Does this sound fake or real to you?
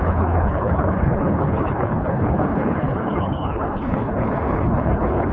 fake